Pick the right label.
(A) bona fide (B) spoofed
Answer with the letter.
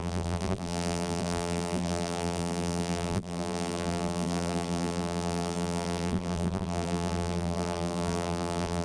B